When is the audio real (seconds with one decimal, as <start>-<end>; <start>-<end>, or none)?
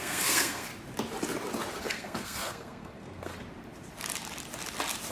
0.7-1.8; 3.3-5.1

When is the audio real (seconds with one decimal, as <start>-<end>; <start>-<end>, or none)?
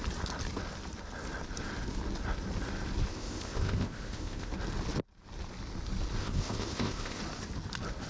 0.0-3.1; 4.5-6.2; 7.2-8.1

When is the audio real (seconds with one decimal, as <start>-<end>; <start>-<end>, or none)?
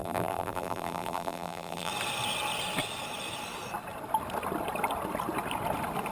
1.9-6.1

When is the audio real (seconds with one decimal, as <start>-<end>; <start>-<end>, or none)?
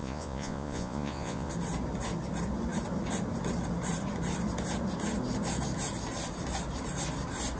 1.5-7.6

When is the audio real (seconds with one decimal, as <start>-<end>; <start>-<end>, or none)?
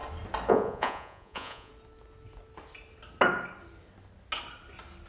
0.0-0.5; 1.7-5.1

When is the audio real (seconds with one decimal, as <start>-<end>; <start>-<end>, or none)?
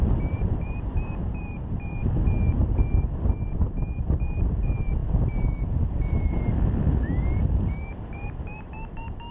2.0-4.5